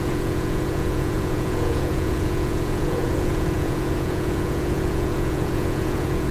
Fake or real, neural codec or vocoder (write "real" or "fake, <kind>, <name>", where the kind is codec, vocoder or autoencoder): fake, vocoder, Vocos